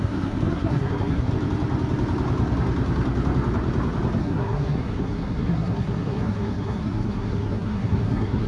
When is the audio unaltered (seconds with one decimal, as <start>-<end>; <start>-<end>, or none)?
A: 1.3-4.2